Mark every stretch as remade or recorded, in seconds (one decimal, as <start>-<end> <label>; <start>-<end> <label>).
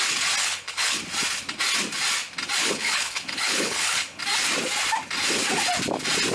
0.0-0.4 recorded; 0.4-1.0 remade; 1.0-2.6 recorded; 2.6-4.2 remade; 4.2-6.3 recorded